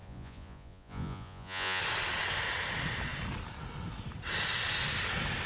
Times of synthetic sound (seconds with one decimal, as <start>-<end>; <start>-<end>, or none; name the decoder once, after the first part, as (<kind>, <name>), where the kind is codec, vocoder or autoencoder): 0.0-1.8 (vocoder, Vocos)

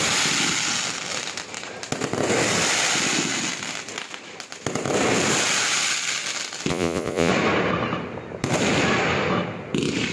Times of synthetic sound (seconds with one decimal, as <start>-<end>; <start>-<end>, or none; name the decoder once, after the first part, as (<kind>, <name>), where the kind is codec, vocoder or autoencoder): 6.7-7.3 (vocoder, Vocos)

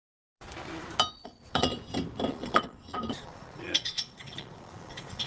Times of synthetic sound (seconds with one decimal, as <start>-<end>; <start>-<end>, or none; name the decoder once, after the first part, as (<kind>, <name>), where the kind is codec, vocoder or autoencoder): 1.1-1.7 (vocoder, Vocos); 2.3-5.3

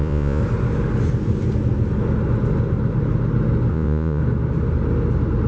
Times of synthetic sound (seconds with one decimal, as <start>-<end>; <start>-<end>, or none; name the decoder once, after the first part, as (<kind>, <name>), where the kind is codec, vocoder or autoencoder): 0.0-0.4 (vocoder, Vocos); 3.7-4.2

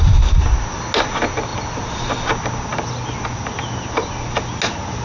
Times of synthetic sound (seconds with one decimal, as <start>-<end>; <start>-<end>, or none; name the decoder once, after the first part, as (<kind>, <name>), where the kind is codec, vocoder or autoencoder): none

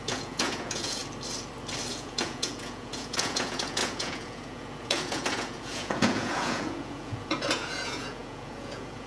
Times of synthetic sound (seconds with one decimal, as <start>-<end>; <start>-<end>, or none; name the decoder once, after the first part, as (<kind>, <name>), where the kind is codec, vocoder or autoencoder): 0.0-1.0 (vocoder, Vocos); 1.9-9.1

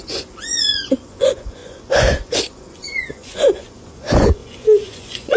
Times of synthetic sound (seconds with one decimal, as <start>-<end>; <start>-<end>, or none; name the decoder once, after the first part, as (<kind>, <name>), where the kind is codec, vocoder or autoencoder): 0.0-5.4 (vocoder, Vocos)